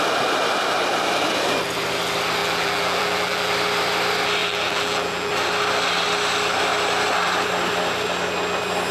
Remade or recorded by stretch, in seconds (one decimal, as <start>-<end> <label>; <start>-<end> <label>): 0.0-2.4 recorded; 2.4-3.5 remade; 3.5-4.4 recorded; 4.4-5.3 remade; 5.3-8.9 recorded